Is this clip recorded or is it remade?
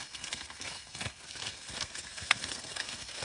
remade